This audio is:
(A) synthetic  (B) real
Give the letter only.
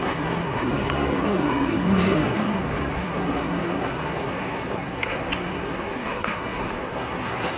A